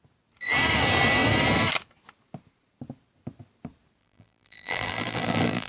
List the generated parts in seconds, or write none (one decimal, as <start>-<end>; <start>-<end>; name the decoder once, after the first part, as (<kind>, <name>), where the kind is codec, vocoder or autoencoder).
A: 4.0-5.7 (vocoder, BigVGAN v2)